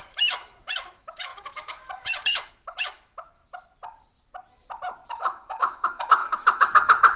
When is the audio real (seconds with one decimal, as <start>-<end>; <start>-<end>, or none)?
3.4-5.1